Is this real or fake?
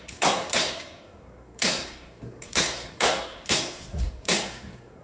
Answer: fake